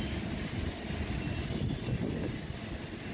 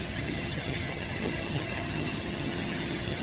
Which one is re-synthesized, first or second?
second